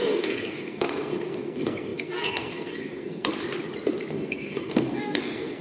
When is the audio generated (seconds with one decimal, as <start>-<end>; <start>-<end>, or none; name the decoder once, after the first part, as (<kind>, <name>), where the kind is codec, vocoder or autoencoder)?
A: 0.0-3.3 (codec, SNAC); 4.1-5.6

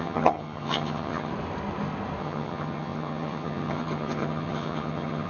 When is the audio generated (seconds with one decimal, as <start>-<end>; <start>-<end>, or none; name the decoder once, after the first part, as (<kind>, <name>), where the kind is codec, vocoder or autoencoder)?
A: 0.0-1.3 (vocoder, HiFi-GAN); 2.2-5.3